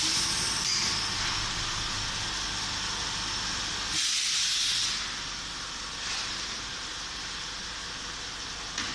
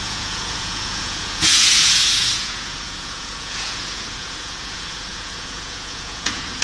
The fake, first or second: second